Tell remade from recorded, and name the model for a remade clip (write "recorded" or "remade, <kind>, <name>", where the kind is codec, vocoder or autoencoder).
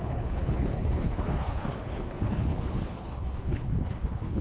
remade, codec, HILCodec